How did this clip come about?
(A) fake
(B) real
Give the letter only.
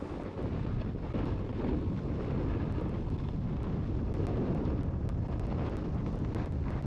B